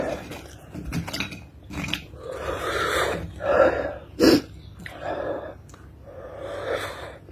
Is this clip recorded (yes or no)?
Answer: yes